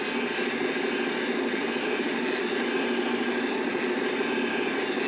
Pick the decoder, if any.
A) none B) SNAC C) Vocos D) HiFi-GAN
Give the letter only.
A